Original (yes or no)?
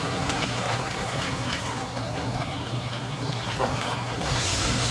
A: no